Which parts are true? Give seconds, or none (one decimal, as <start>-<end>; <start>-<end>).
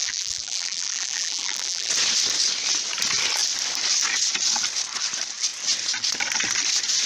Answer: 1.9-7.1